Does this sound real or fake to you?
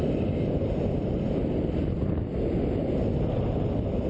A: real